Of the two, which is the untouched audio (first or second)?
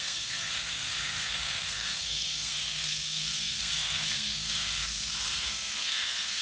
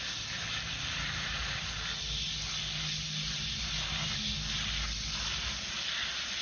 second